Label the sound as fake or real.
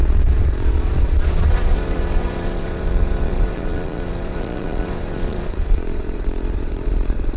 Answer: fake